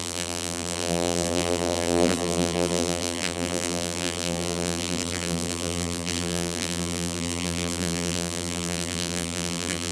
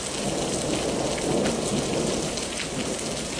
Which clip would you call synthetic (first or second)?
first